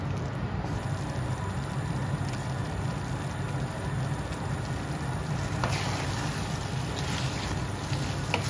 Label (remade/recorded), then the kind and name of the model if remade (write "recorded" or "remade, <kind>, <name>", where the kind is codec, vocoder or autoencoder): recorded